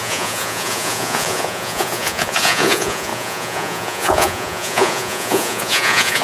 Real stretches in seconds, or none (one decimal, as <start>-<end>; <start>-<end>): none